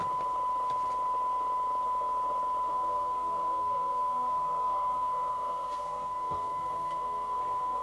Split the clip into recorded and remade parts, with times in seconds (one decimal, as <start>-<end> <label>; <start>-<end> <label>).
0.0-2.7 recorded; 2.7-7.8 remade